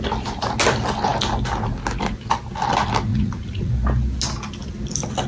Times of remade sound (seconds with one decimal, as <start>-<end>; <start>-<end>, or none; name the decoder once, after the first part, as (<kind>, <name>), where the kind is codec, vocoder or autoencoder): 3.1-3.7 (vocoder, Vocos)